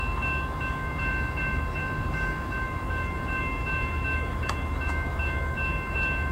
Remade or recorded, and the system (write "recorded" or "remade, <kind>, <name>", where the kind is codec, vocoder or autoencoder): remade, autoencoder, DAC-VAE